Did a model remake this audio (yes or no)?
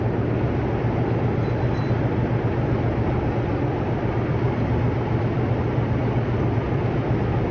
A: no